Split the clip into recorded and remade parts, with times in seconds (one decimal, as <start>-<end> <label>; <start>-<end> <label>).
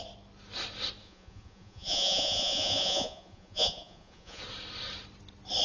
0.0-1.0 recorded; 1.0-4.4 remade; 4.4-5.6 recorded